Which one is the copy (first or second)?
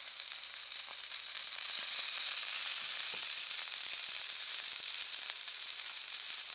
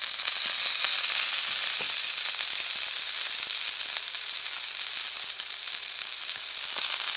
first